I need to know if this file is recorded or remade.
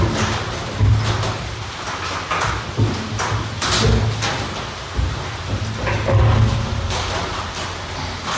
recorded